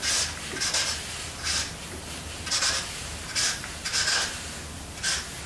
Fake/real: real